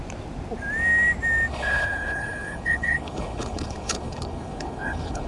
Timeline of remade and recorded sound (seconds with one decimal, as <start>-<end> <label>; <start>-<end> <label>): 0.0-1.5 recorded; 1.5-5.3 remade